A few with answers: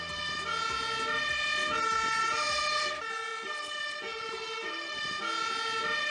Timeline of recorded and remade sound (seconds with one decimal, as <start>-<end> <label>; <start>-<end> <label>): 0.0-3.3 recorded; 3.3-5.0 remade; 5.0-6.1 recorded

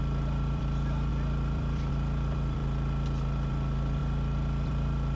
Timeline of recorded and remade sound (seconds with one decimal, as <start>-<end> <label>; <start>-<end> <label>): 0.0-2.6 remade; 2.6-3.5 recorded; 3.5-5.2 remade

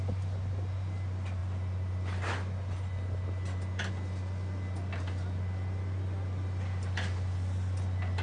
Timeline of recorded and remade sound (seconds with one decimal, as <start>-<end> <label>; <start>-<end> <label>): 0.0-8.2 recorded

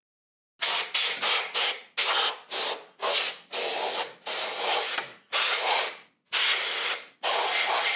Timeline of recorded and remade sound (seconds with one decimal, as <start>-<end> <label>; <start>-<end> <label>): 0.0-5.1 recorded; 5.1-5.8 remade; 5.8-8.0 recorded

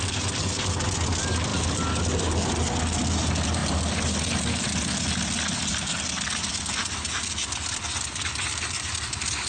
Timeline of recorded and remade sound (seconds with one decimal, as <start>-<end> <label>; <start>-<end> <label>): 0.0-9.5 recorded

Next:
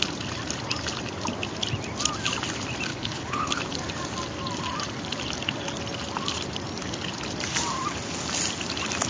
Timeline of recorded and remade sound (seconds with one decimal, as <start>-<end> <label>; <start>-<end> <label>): 0.0-2.9 recorded; 2.9-3.6 remade; 3.6-9.1 recorded

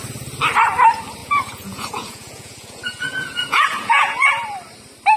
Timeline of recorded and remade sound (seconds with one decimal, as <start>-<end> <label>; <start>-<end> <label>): 0.0-1.2 recorded; 1.2-4.3 remade; 4.3-5.2 recorded

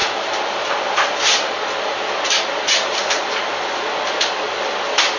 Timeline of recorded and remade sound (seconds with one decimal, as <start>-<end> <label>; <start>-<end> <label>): 0.0-5.2 recorded